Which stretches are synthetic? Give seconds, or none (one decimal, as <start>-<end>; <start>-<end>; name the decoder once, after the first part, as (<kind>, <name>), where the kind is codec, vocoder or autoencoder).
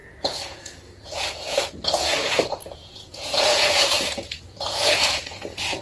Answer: 0.0-5.8 (vocoder, Vocos)